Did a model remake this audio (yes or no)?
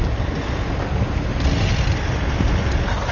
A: no